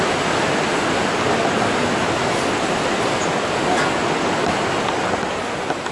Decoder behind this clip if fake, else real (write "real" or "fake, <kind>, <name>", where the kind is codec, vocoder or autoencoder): real